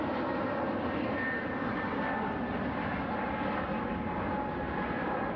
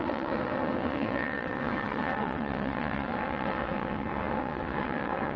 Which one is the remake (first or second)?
second